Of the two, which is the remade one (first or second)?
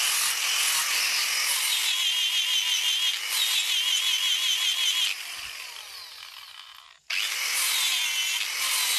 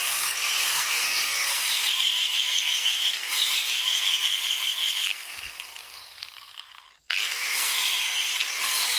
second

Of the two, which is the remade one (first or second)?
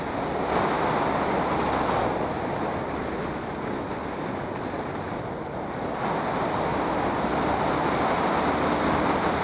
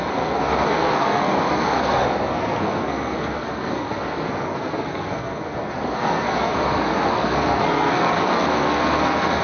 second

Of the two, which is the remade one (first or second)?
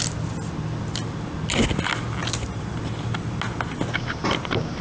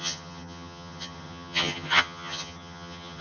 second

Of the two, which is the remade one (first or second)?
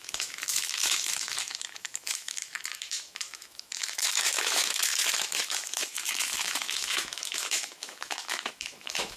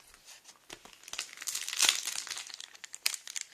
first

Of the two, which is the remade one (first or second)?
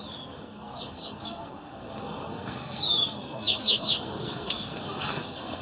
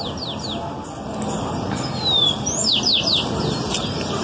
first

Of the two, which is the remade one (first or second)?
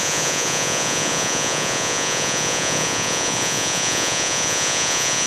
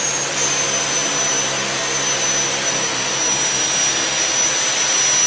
first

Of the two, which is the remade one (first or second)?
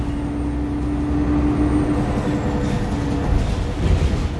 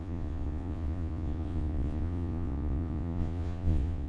second